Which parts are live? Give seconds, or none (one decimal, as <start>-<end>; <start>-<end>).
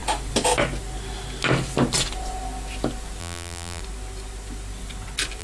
0.0-3.2; 3.8-5.4